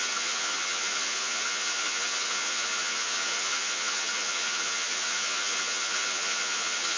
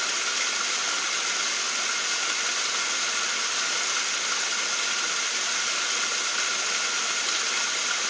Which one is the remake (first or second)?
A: first